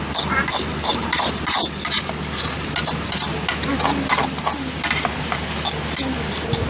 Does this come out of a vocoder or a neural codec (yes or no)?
no